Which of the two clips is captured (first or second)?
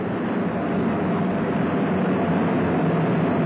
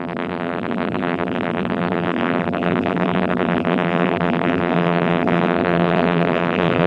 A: first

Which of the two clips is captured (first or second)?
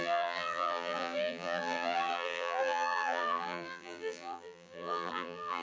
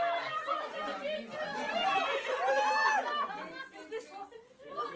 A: second